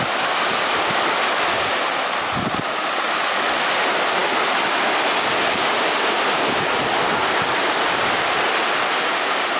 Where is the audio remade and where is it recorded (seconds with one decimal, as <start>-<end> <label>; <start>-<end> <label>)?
0.0-9.6 recorded